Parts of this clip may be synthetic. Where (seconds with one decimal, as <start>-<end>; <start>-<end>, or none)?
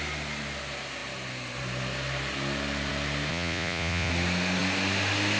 3.3-4.1